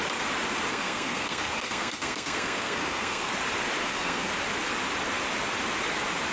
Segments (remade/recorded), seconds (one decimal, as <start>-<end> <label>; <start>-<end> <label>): 0.0-0.7 recorded; 0.7-3.3 remade; 3.3-3.8 recorded; 3.8-4.3 remade; 4.3-6.3 recorded